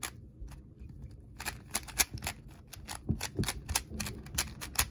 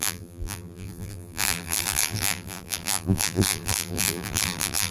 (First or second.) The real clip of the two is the first